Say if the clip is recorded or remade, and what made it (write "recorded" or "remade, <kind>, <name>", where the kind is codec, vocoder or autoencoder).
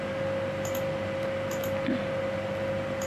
recorded